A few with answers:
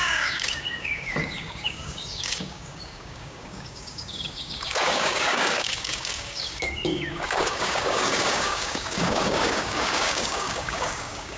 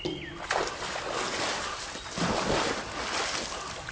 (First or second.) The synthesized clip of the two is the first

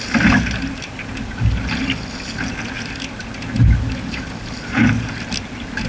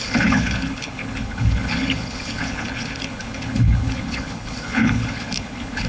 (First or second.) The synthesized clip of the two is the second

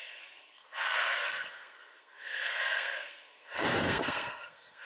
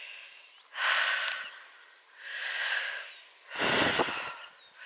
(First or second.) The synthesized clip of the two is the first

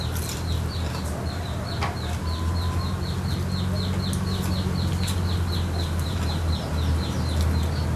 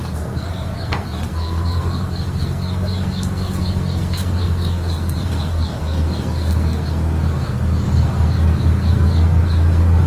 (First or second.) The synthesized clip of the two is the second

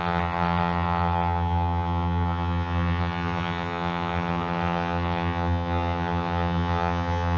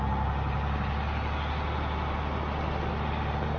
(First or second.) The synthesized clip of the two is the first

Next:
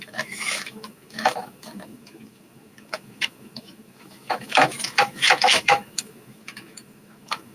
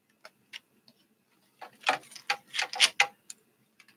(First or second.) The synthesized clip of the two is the first